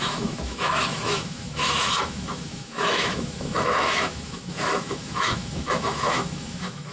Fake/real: fake